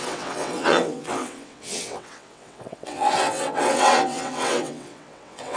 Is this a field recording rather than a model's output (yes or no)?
no